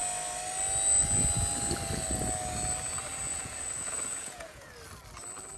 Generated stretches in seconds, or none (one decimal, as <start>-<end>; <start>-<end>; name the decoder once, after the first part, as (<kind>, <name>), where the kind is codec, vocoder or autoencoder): 3.3-4.7 (vocoder, Vocos)

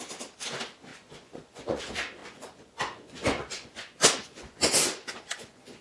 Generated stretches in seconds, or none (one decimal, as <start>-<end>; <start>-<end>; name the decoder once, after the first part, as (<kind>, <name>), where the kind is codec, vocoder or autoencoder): 0.9-1.8 (vocoder, Vocos); 2.2-5.8